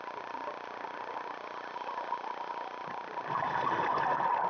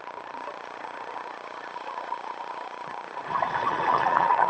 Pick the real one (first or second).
first